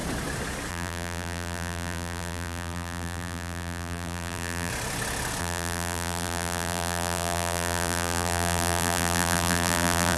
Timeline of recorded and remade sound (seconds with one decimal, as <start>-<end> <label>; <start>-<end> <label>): 0.0-0.7 recorded; 0.7-4.7 remade; 4.7-5.4 recorded; 5.4-10.2 remade